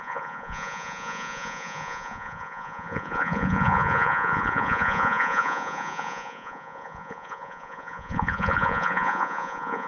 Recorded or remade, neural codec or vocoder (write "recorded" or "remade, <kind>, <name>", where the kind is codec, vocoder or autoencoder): remade, vocoder, Vocos